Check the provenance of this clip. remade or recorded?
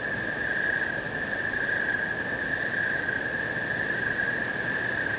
recorded